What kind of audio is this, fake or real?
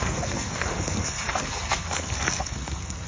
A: fake